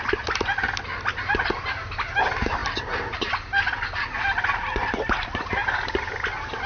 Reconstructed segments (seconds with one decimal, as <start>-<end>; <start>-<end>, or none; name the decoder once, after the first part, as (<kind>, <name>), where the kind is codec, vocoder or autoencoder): none